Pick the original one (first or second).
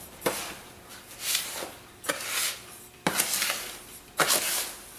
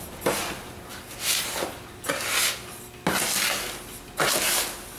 second